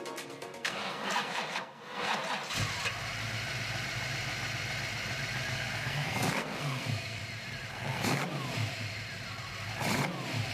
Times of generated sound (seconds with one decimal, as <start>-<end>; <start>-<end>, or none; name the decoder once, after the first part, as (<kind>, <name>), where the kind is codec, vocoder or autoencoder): 0.0-2.2 (codec, SNAC); 5.5-7.2; 7.7-8.2

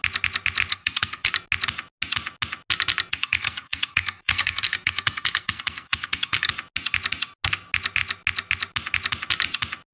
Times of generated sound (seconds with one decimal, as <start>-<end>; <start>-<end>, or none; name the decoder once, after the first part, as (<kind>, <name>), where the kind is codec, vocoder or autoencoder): 0.7-1.3 (codec, SNAC); 3.1-6.5

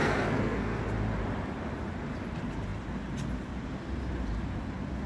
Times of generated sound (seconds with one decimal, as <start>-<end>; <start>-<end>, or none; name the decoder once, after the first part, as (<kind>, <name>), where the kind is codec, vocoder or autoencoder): 0.0-0.8 (codec, SNAC)